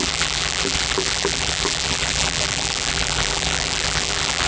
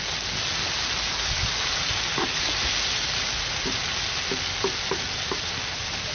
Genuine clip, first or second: second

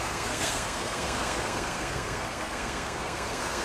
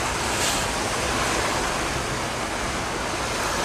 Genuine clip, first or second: second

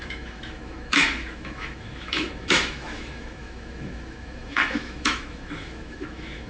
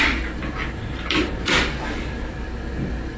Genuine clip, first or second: second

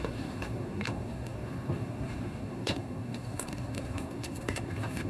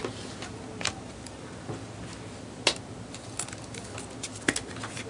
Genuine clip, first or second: second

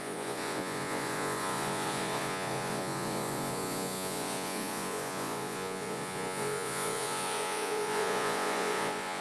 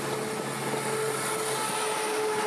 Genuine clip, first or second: second